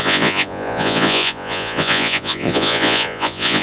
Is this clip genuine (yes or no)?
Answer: no